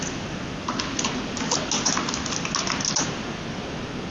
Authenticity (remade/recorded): recorded